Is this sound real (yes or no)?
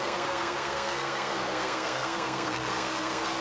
no